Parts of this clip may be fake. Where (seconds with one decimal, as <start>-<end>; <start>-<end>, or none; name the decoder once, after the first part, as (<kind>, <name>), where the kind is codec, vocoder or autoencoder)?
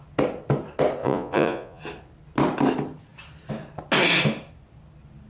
1.0-1.8 (vocoder, Vocos)